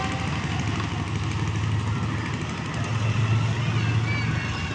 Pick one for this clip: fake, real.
real